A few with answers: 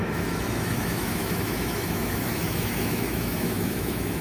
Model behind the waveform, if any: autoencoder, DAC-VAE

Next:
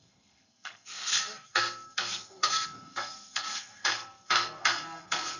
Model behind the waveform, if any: codec, SNAC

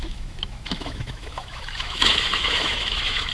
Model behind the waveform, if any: autoencoder, DAC-VAE